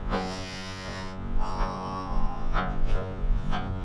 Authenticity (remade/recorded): remade